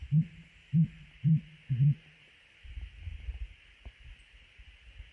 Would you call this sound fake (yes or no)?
yes